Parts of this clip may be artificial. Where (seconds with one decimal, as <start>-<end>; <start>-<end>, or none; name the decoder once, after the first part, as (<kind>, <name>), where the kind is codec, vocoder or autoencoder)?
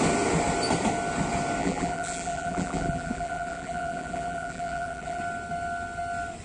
1.6-5.2 (vocoder, BigVGAN v2)